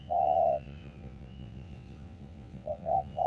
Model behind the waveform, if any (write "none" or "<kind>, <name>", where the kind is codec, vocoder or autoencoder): vocoder, WaveNeXt